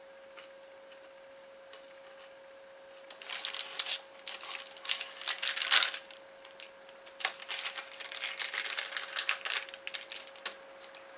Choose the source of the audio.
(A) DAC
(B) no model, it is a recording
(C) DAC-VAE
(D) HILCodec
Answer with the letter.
B